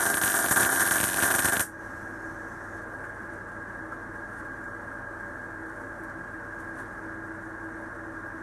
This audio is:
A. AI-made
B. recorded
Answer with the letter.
B